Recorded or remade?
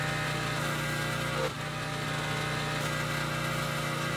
recorded